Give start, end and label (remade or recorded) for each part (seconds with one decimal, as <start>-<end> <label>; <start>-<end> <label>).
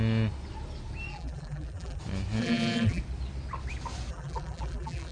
0.0-1.1 recorded; 1.1-2.0 remade; 2.0-2.4 recorded; 2.4-3.0 remade; 3.0-4.1 recorded; 4.1-5.1 remade